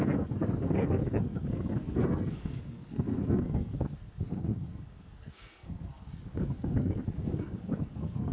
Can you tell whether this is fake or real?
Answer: fake